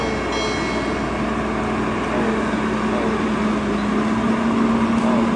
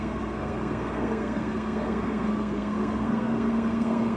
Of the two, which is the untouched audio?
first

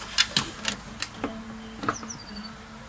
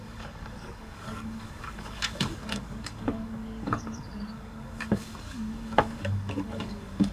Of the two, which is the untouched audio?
first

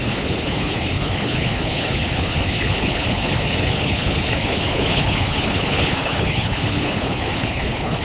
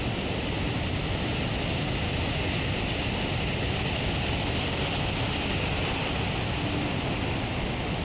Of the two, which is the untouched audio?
second